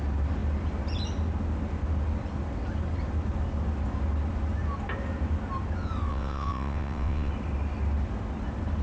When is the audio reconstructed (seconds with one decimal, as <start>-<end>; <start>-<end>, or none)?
6.1-7.3